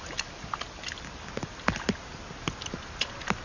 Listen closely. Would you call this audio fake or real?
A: real